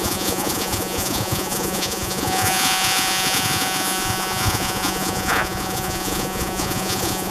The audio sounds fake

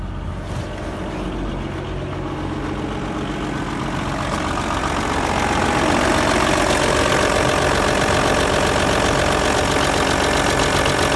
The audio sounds real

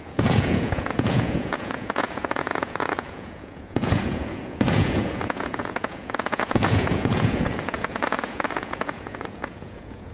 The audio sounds fake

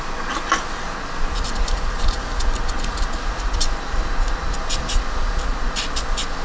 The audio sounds real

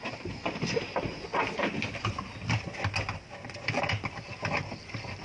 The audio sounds real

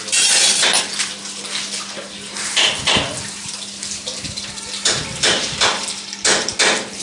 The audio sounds real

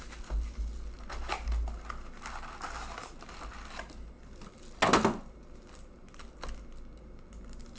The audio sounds real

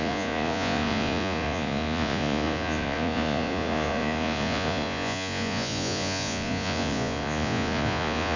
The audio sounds fake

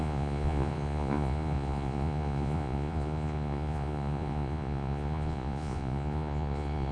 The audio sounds fake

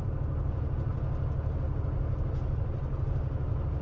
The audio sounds real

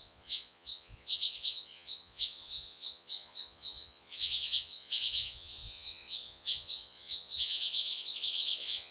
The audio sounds fake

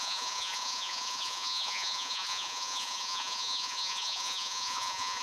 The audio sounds fake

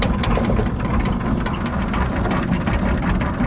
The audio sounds real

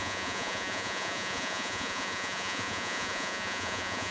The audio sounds fake